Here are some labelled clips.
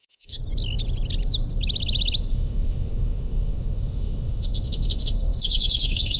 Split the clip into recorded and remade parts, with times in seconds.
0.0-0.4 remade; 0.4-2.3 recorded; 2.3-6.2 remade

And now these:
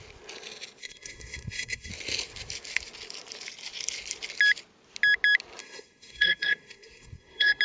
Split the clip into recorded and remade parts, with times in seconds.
0.0-0.8 recorded; 0.8-1.9 remade; 1.9-5.6 recorded; 5.6-7.6 remade

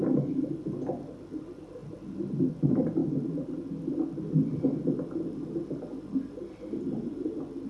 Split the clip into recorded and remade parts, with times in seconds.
0.0-7.7 recorded

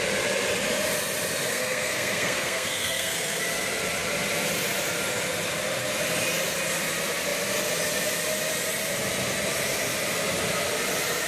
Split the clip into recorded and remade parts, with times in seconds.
0.0-1.5 recorded; 1.5-3.4 remade; 3.4-11.3 recorded